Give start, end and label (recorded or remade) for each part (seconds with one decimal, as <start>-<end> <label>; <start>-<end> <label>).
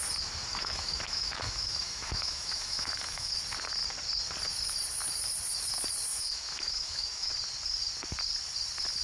0.0-0.5 recorded; 0.5-3.3 remade; 3.3-6.1 recorded; 6.1-7.3 remade; 7.3-9.0 recorded